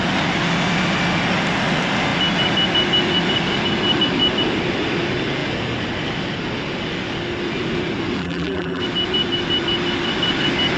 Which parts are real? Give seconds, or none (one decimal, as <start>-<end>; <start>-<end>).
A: 0.0-8.2; 8.8-10.8